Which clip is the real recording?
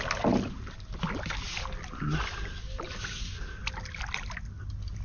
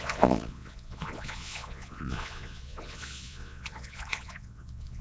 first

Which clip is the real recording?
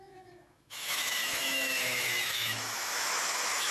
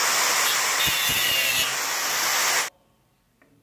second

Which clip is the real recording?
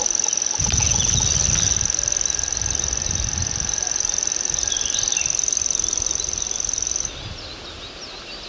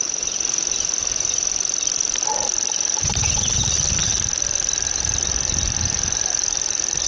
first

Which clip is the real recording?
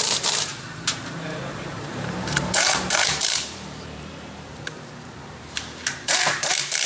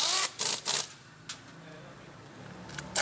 second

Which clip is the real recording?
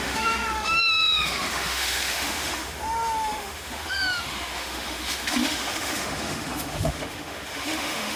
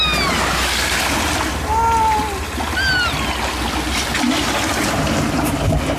second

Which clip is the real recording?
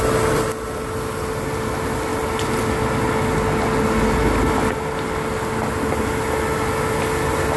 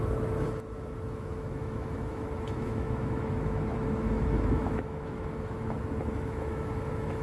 first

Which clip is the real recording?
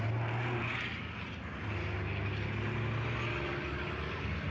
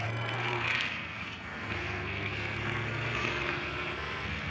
first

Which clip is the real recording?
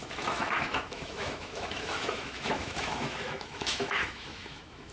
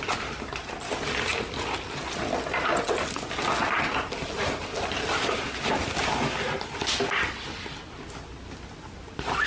second